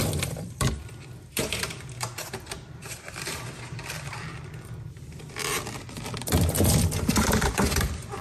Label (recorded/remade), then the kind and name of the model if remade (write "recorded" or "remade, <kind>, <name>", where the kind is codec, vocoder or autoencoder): remade, vocoder, BigVGAN v2